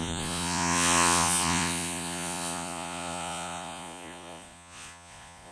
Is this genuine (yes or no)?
no